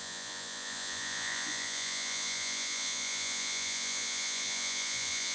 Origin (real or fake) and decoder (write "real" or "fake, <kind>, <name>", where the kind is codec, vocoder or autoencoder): fake, vocoder, Vocos